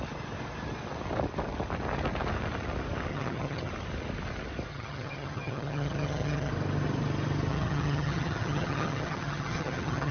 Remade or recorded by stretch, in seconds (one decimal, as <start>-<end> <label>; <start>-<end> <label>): 0.0-3.1 recorded; 3.1-3.7 remade; 3.7-4.7 recorded; 4.7-6.5 remade; 6.5-7.5 recorded; 7.5-10.1 remade